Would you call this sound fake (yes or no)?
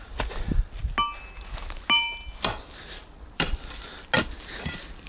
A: no